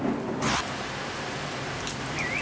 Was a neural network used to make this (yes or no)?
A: no